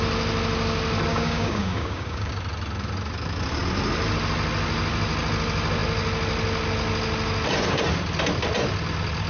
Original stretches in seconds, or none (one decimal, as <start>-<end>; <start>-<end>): 0.0-1.1; 2.3-9.3